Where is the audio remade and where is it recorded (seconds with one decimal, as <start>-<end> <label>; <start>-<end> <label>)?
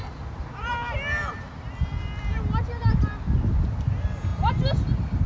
0.0-5.3 recorded